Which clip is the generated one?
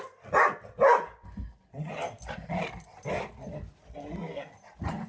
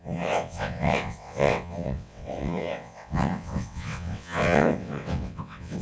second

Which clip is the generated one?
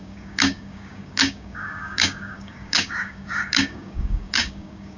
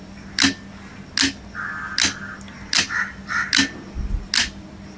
first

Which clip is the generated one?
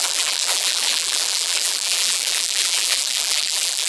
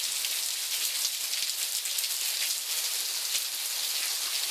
first